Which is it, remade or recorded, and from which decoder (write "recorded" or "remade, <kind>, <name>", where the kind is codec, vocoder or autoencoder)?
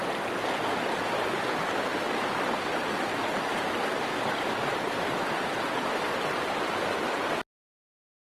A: recorded